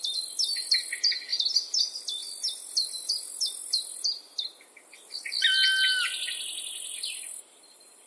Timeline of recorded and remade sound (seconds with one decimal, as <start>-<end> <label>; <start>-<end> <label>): 0.0-8.1 recorded